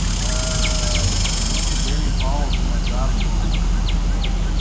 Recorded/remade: recorded